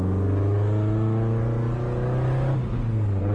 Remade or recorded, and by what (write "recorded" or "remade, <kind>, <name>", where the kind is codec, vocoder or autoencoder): recorded